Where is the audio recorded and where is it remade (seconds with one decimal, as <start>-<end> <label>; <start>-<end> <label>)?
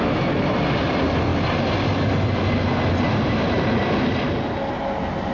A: 0.0-5.3 recorded